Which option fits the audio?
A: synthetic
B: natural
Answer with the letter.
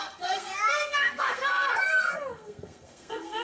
A